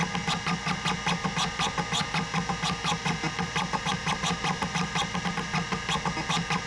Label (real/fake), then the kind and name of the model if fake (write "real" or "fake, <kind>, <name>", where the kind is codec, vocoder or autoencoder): real